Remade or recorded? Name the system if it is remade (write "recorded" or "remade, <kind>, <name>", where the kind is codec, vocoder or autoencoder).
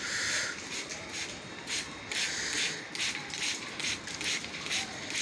recorded